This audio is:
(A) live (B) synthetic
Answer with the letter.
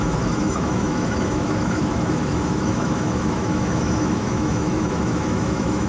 B